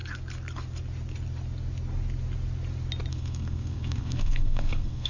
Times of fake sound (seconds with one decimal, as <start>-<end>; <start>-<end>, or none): 3.1-5.1

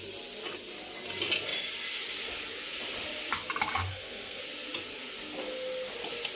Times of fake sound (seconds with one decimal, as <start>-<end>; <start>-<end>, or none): 3.9-4.4

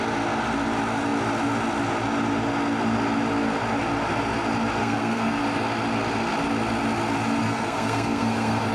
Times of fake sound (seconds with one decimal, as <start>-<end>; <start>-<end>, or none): 4.8-5.4; 7.4-8.7

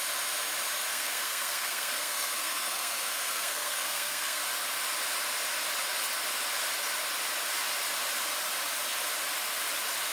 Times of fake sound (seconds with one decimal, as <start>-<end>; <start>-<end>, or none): 0.9-4.4

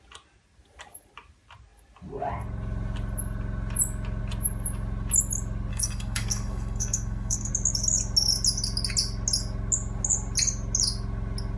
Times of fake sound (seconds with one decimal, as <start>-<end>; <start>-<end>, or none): 5.7-7.5

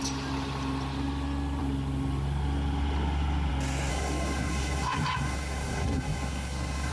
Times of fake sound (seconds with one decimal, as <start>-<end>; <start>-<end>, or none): 3.9-6.9

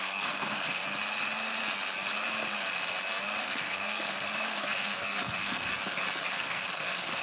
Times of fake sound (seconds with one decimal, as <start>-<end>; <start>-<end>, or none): 0.0-0.8; 3.4-5.7; 6.3-7.2